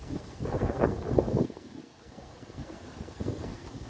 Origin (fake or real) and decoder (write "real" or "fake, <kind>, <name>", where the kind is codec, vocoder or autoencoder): fake, codec, SNAC